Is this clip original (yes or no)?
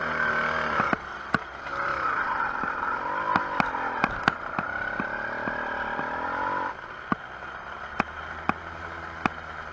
yes